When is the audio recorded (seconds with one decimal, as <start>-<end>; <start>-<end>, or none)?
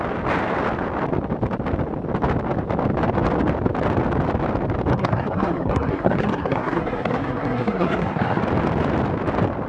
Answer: 0.0-4.9; 8.4-9.7